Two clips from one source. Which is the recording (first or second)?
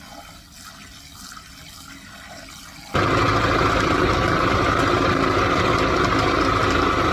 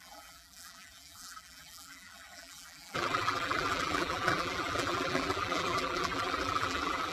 first